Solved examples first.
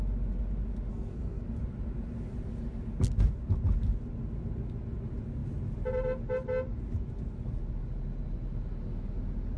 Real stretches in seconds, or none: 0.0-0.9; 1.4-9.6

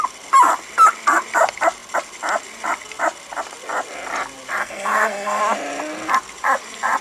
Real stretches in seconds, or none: 0.0-4.6; 5.4-7.0

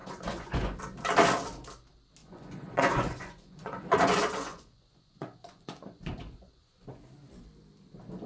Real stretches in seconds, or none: 0.8-2.2; 7.0-8.3

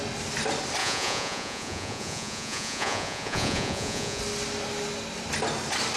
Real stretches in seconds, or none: 0.0-0.8; 4.2-6.0

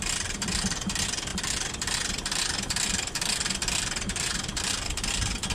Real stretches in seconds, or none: 0.0-5.5

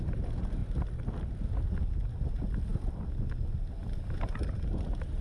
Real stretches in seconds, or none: 0.0-0.6; 1.8-5.2

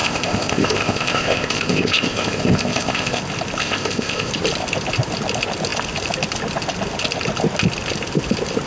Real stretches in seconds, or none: 3.2-3.6; 4.3-8.7

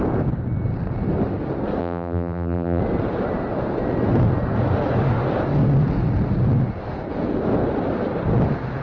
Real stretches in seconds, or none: 0.0-1.8; 2.8-8.8